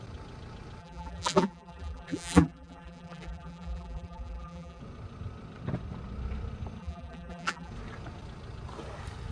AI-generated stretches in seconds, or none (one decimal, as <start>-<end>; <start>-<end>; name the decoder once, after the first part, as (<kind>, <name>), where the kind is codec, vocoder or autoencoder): 0.8-4.8 (vocoder, BigVGAN v2); 6.8-7.7